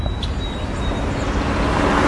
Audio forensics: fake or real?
real